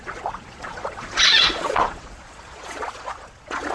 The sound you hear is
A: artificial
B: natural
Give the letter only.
A